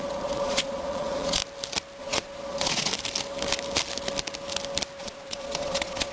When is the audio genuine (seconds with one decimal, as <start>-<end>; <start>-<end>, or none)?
1.4-2.0; 2.9-5.0